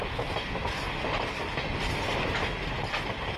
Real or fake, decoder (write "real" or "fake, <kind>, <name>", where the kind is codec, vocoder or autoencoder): real